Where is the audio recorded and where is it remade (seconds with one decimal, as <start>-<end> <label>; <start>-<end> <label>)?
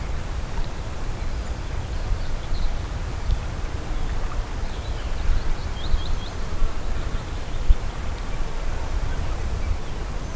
0.0-8.7 remade; 8.7-9.7 recorded; 9.7-10.4 remade